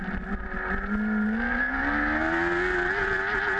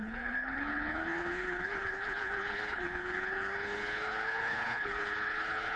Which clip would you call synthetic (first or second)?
second